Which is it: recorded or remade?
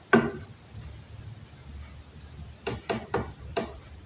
recorded